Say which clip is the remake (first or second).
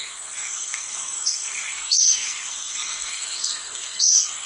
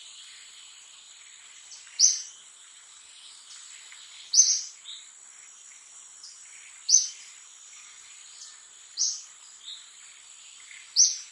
first